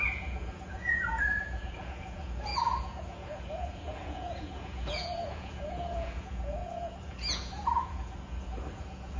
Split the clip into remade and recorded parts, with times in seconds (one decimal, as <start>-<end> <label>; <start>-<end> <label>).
0.0-9.2 remade